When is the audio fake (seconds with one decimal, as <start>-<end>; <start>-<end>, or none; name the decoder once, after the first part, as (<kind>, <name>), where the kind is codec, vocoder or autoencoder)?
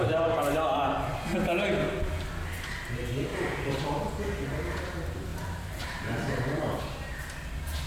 3.3-4.1 (vocoder, BigVGAN v2); 5.3-6.8